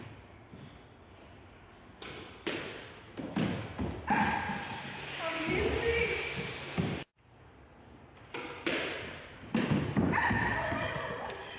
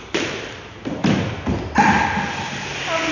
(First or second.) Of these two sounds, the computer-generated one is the second